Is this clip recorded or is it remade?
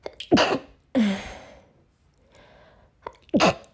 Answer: recorded